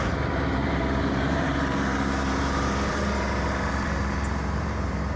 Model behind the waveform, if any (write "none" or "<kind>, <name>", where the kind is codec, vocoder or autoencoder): vocoder, BigVGAN v2